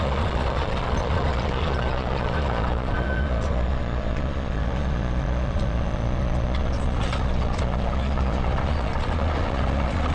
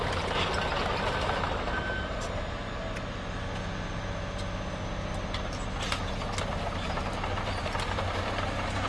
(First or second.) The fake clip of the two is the first